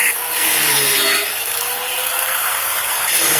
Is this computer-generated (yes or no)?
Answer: yes